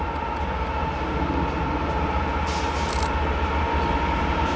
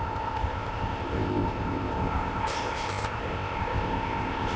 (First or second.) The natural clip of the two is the first